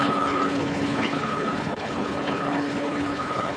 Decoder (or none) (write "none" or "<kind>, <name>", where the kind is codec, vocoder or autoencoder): codec, HILCodec